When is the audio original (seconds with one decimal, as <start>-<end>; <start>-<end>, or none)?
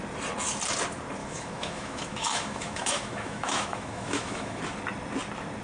0.0-1.2; 4.6-5.6